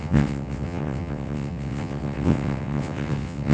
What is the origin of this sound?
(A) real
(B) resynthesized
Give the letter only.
B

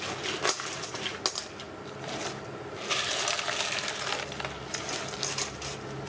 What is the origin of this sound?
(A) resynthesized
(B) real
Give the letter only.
B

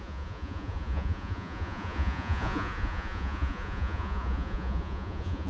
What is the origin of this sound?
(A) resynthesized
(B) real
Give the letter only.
A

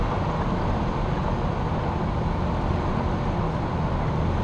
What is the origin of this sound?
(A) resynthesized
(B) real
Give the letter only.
B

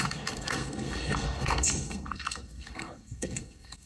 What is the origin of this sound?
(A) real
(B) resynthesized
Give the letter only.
B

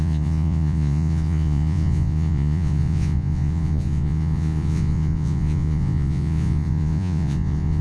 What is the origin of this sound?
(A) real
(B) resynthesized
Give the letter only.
B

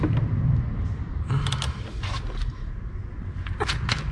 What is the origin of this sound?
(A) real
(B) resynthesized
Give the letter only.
A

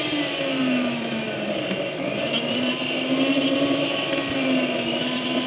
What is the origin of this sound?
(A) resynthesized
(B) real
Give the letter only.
B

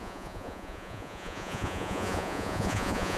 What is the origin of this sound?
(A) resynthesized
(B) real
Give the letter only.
A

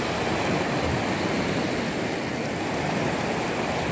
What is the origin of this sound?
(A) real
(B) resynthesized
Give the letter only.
A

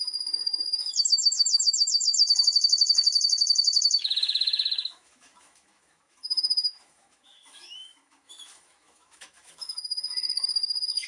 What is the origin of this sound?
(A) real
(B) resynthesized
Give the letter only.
B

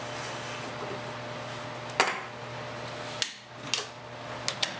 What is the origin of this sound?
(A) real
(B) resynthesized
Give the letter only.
A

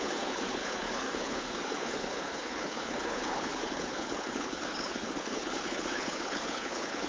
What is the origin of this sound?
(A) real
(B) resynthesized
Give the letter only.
B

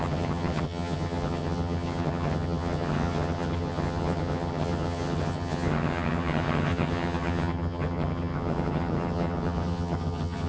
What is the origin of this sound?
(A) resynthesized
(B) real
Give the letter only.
A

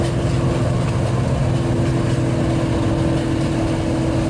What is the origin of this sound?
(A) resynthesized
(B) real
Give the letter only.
B